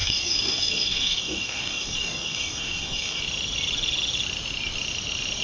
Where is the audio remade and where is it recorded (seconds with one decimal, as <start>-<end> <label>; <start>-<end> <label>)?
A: 0.0-3.2 remade; 3.2-5.4 recorded